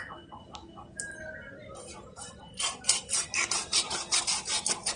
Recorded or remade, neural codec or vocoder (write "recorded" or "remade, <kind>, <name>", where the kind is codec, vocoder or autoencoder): recorded